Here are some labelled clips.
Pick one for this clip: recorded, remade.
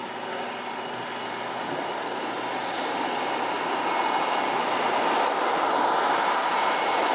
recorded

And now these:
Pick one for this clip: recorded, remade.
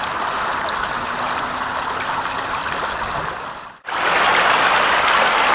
recorded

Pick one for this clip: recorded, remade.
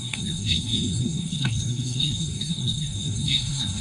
remade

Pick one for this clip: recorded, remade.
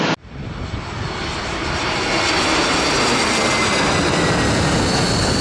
recorded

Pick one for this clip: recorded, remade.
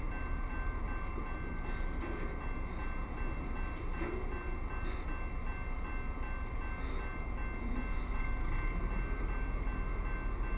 recorded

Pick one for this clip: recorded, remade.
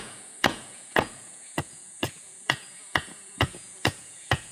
remade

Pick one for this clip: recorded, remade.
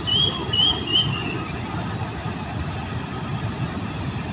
recorded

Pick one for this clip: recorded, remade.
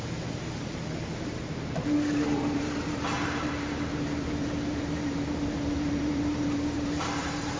remade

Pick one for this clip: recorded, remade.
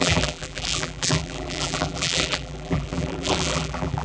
remade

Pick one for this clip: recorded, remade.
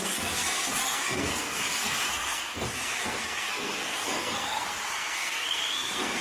remade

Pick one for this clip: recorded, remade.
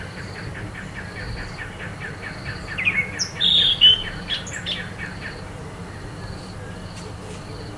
recorded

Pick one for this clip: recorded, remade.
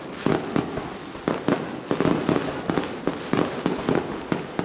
recorded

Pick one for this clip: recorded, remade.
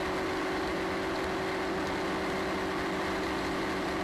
recorded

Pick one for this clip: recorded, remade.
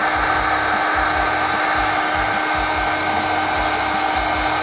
recorded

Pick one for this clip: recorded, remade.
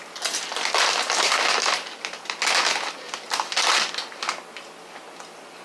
recorded